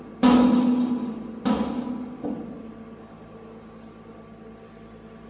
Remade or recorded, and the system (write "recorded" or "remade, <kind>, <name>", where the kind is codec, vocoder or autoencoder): recorded